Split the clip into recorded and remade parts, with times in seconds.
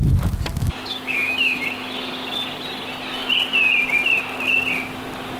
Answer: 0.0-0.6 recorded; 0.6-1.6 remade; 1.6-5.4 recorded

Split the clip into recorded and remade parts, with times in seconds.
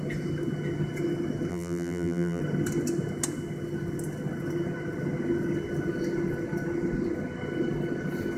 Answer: 0.0-1.5 recorded; 1.5-2.4 remade; 2.4-8.4 recorded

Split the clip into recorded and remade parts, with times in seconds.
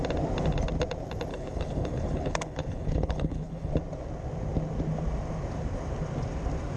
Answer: 0.0-1.3 recorded; 1.3-3.7 remade; 3.7-6.8 recorded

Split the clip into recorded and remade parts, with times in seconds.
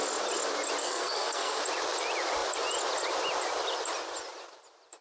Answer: 0.0-0.8 recorded; 0.8-1.6 remade; 1.6-5.0 recorded